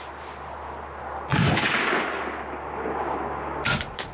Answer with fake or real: real